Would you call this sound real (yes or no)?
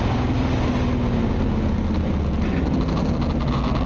yes